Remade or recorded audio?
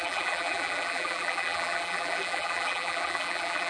remade